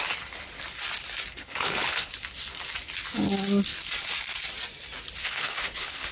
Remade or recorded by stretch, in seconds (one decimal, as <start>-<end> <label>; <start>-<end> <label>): 0.0-1.4 recorded; 1.4-2.1 remade; 2.1-5.2 recorded; 5.2-6.1 remade